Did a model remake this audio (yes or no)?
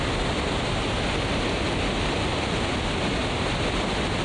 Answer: no